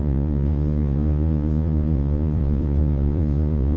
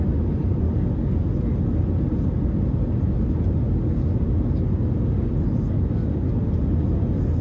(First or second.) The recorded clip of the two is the second